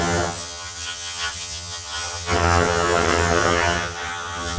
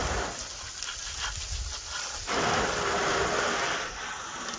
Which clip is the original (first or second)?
second